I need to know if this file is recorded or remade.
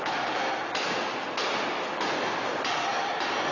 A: recorded